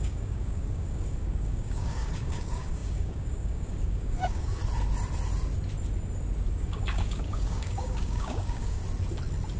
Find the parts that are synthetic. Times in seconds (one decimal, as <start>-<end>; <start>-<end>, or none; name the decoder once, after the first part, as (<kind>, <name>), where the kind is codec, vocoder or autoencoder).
0.0-4.6 (codec, DAC); 6.5-8.8

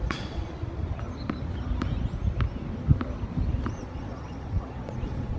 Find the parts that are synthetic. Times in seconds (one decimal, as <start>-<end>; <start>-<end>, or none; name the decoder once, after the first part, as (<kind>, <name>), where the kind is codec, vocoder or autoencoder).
0.0-0.5 (vocoder, Vocos); 3.7-5.4

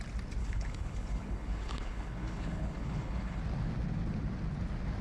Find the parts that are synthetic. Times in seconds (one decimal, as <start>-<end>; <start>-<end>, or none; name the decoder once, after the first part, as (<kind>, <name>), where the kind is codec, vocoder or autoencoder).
0.4-3.4 (codec, HILCodec)

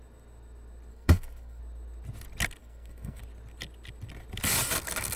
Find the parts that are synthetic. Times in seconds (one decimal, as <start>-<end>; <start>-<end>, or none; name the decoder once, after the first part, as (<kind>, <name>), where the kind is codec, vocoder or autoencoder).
0.9-1.6 (codec, SNAC); 2.6-3.2

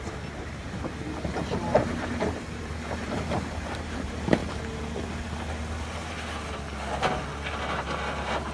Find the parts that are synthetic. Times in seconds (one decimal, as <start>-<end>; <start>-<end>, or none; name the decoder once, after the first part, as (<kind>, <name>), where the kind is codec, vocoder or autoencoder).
0.0-4.4 (vocoder, BigVGAN v2); 7.5-8.5